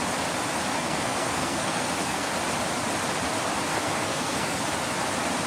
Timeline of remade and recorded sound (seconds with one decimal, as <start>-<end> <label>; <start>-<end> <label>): 0.0-0.7 recorded; 0.7-2.3 remade; 2.3-3.7 recorded; 3.7-4.6 remade; 4.6-5.5 recorded